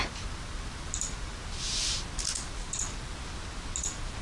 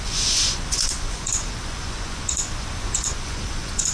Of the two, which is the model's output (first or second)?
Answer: second